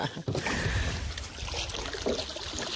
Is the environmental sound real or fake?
real